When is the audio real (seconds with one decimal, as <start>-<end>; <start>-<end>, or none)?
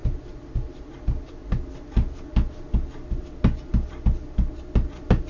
0.0-5.3